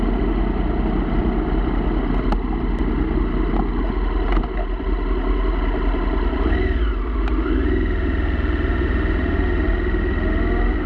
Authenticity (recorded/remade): recorded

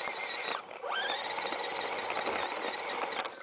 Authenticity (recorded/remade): recorded